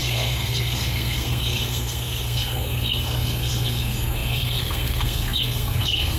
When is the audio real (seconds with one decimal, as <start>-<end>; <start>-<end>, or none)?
none